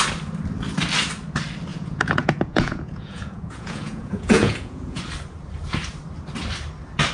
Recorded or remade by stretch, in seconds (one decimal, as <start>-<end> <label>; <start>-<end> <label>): 0.0-1.7 recorded; 1.7-5.0 remade; 5.0-7.1 recorded